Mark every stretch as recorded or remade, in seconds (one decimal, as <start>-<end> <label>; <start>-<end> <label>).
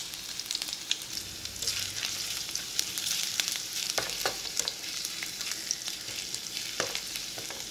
0.0-1.1 remade; 1.1-1.7 recorded; 1.7-5.4 remade; 5.4-7.7 recorded